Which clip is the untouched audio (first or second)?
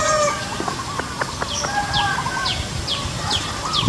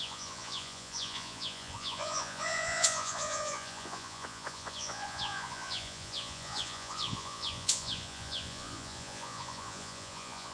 first